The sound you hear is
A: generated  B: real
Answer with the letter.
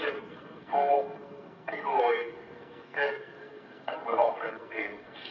A